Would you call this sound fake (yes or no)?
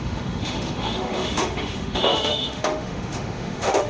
yes